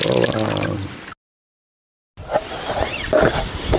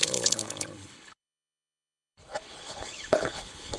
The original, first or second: first